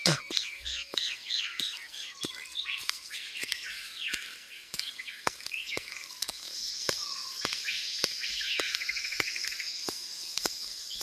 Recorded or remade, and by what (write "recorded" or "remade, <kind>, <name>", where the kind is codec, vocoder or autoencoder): remade, codec, SNAC